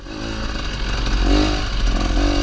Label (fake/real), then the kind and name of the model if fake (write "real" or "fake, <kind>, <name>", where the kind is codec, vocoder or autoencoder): real